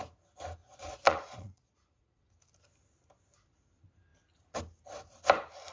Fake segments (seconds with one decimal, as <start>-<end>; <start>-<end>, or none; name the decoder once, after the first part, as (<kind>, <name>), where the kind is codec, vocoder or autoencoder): 0.6-2.4 (vocoder, Vocos)